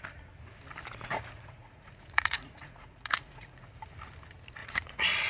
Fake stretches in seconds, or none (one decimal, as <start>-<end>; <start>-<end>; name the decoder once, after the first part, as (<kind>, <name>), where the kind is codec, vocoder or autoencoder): 1.1-3.8 (vocoder, Vocos); 4.6-5.3